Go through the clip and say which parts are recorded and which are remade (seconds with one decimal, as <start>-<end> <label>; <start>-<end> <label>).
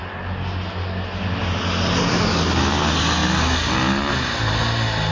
0.0-5.1 recorded